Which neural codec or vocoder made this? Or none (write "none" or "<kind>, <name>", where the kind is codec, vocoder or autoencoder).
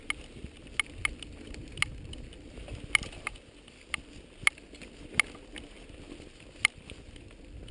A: none